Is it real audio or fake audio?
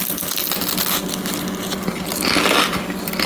real